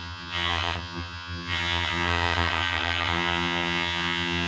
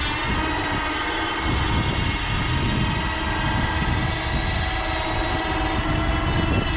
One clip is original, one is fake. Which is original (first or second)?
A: second